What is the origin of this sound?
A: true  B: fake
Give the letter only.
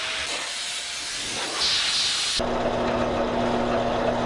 A